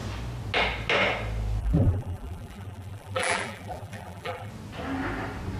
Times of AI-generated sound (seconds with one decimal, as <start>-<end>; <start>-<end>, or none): 1.6-4.5